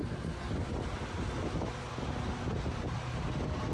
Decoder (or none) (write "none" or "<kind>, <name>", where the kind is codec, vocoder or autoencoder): none